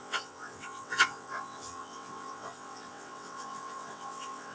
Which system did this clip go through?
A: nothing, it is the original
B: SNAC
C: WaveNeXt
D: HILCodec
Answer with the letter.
C